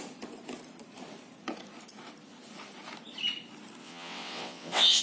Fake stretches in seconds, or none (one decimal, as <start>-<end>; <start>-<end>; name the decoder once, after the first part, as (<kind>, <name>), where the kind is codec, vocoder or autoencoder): 3.8-5.0 (vocoder, WaveNeXt)

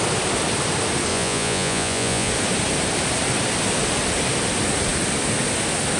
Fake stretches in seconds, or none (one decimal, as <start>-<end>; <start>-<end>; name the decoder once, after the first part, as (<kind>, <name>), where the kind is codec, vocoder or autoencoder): 1.1-2.3 (vocoder, Vocos)